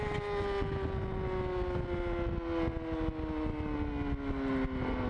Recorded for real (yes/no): yes